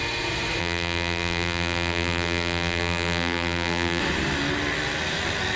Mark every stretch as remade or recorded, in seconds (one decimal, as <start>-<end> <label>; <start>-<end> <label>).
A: 0.0-0.6 recorded; 0.6-4.0 remade; 4.0-5.6 recorded